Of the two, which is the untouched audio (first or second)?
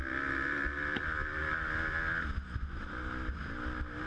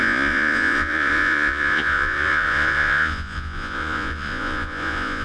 first